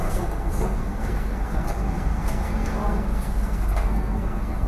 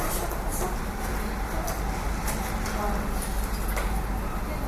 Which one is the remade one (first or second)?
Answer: first